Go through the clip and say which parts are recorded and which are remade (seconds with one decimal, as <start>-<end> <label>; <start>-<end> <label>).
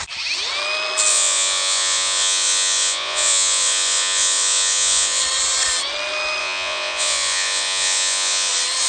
0.0-1.1 recorded; 1.1-5.2 remade; 5.2-6.4 recorded; 6.4-8.5 remade; 8.5-8.9 recorded